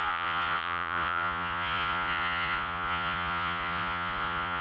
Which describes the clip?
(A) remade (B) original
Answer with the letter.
A